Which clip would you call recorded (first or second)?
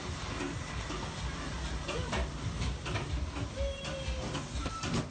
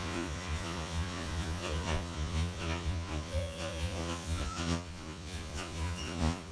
first